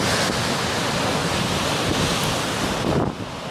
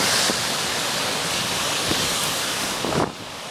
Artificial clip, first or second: second